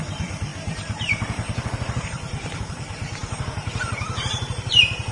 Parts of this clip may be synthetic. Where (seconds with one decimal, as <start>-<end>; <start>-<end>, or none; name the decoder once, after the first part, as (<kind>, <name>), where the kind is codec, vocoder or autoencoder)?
0.0-5.1 (vocoder, BigVGAN v2)